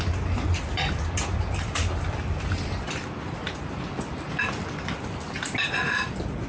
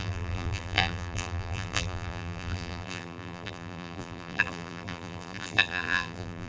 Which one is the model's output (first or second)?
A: second